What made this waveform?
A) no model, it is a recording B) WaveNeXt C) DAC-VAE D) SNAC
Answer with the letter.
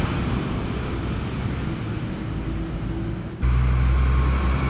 A